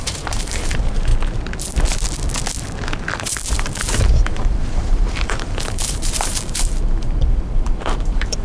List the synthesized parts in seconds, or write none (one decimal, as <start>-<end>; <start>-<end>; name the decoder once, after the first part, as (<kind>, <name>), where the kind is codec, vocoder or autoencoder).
0.0-1.1 (vocoder, BigVGAN v2); 3.2-8.4